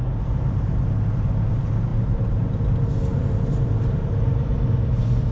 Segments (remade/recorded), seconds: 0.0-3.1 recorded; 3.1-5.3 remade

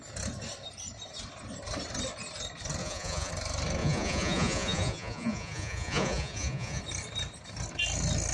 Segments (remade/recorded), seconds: 0.0-2.8 recorded; 2.8-3.3 remade; 3.3-3.8 recorded; 3.8-6.8 remade; 6.8-8.3 recorded

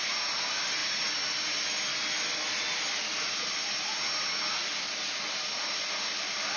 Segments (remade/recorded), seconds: 0.0-6.6 recorded

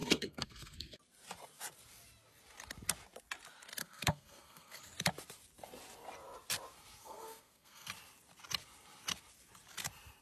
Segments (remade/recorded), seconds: 0.0-1.0 remade; 1.0-3.8 recorded; 3.8-4.8 remade; 4.8-7.0 recorded; 7.0-7.9 remade; 7.9-10.2 recorded

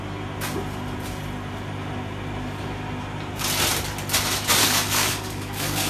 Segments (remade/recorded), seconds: 0.0-4.6 recorded; 4.6-5.9 remade

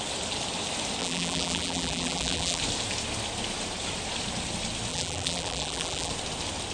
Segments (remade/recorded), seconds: 0.0-1.0 recorded; 1.0-2.6 remade; 2.6-4.9 recorded; 4.9-6.1 remade; 6.1-6.7 recorded

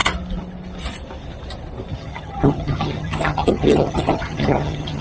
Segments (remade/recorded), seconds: 0.0-1.9 recorded; 1.9-5.0 remade

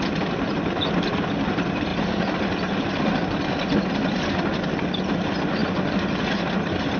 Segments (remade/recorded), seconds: 0.0-7.0 recorded